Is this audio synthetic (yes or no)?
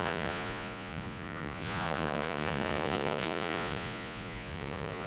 yes